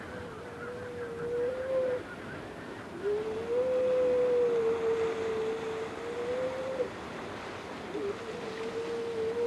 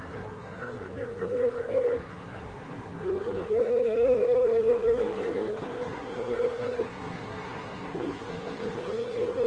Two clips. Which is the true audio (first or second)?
first